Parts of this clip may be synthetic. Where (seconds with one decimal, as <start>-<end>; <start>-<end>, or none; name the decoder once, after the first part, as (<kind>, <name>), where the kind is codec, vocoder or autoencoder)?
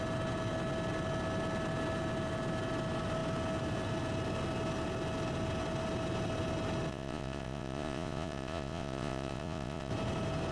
6.9-9.9 (vocoder, Vocos)